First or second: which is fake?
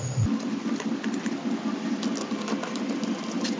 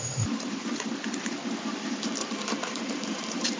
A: second